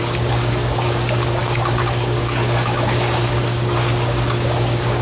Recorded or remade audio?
remade